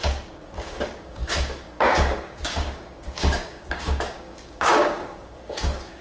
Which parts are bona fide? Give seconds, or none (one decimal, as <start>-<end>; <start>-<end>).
none